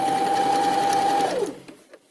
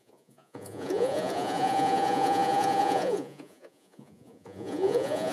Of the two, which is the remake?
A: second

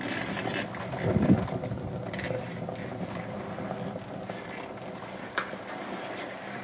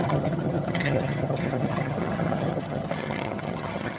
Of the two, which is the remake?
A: second